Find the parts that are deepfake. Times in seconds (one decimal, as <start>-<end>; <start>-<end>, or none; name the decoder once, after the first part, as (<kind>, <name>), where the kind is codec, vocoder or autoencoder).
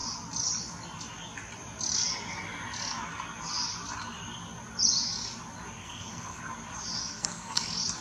5.8-6.4 (codec, SNAC); 7.0-7.6